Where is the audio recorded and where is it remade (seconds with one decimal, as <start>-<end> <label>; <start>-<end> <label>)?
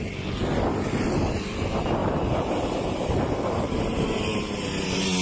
0.0-2.0 recorded; 2.0-4.4 remade; 4.4-5.2 recorded